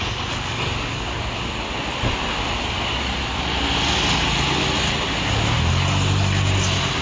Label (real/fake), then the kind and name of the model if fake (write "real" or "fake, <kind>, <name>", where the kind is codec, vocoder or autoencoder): real